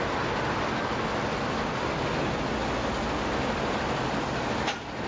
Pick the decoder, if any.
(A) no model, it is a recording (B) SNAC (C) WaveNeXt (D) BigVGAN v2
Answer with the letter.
A